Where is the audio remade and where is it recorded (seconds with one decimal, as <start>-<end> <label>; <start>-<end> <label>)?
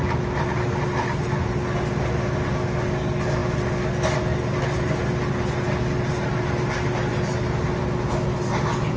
0.0-9.0 recorded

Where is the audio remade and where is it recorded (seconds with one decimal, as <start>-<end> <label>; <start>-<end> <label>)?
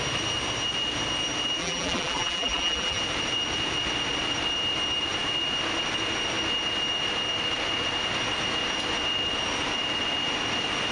0.0-1.6 recorded; 1.6-3.0 remade; 3.0-10.9 recorded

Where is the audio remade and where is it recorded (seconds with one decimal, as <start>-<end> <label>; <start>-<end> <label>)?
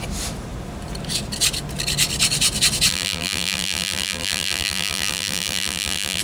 0.0-2.9 recorded; 2.9-6.2 remade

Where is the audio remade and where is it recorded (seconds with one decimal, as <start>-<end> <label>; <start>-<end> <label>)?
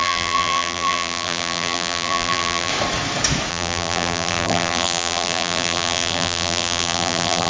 0.0-2.7 remade; 2.7-3.5 recorded; 3.5-7.5 remade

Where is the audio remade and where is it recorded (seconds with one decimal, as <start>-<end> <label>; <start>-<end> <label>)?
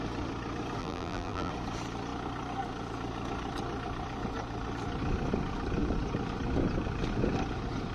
0.0-0.8 recorded; 0.8-1.5 remade; 1.5-7.9 recorded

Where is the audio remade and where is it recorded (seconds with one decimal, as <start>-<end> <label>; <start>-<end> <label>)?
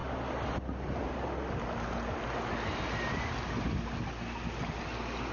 0.0-5.3 recorded